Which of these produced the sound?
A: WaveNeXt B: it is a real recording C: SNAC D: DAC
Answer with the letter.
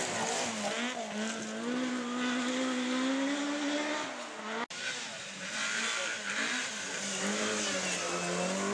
B